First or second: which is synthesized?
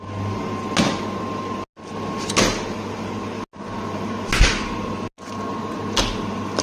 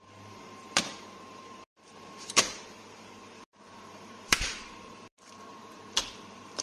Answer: second